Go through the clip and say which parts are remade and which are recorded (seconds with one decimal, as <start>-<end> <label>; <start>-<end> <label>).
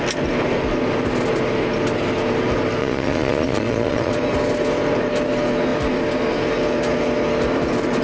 0.0-2.8 recorded; 2.8-4.1 remade; 4.1-8.0 recorded